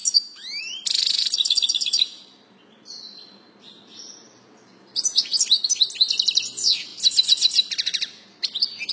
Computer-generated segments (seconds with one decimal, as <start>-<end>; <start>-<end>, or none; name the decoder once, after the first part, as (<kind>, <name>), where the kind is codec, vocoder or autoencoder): none